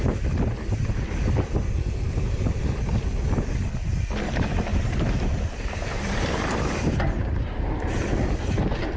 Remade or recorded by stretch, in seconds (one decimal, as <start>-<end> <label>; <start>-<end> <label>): 0.0-4.7 recorded; 4.7-7.6 remade; 7.6-9.0 recorded